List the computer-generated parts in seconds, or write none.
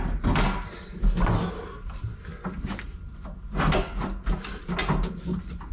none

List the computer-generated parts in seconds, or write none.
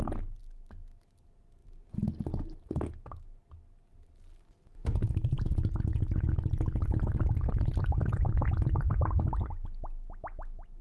none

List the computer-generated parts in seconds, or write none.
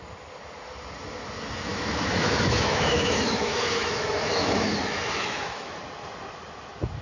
1.7-5.8 (autoencoder, DAC-VAE)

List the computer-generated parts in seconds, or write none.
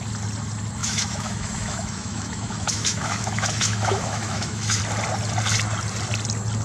0.8-4.8 (autoencoder, DAC-VAE)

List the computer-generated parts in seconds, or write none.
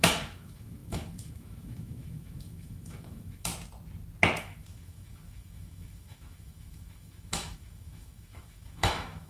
0.0-3.5 (autoencoder, DAC-VAE); 4.4-9.3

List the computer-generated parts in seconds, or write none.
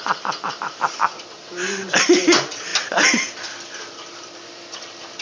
none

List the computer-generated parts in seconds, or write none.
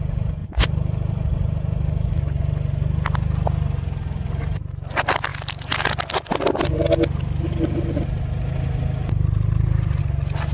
none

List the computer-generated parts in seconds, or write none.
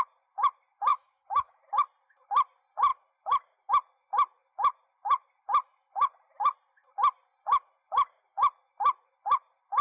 0.9-1.6 (autoencoder, DAC-VAE)